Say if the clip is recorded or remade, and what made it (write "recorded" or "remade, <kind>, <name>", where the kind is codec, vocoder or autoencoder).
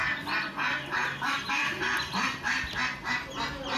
recorded